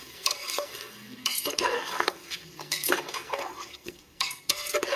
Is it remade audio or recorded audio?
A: remade